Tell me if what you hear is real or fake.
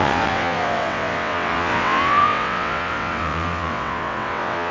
fake